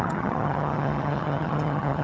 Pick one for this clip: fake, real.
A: fake